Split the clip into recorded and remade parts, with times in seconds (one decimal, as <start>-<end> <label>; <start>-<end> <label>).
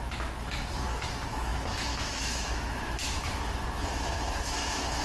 0.0-5.0 remade